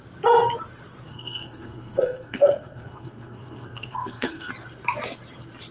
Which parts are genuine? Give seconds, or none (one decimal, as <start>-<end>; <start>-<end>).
0.0-1.1; 4.5-5.7